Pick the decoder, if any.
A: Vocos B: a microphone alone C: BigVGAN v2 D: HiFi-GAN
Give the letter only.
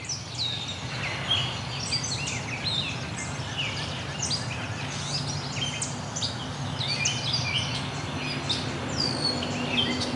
B